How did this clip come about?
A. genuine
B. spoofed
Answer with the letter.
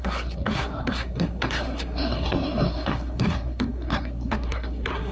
B